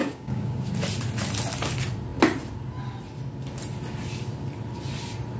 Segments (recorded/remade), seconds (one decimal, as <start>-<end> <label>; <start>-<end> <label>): 0.0-0.6 remade; 0.6-5.4 recorded